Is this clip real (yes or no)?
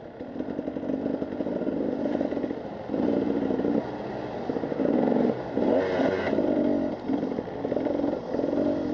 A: yes